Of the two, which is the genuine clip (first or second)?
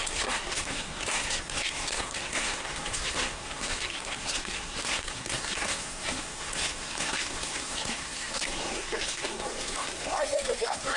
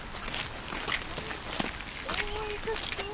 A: second